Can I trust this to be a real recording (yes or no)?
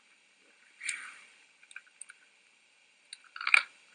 yes